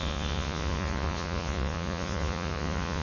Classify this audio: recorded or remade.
remade